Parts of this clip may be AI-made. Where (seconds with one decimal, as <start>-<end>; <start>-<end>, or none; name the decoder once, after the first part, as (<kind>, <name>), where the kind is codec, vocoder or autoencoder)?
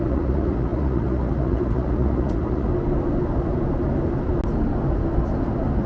0.0-2.7 (vocoder, Vocos)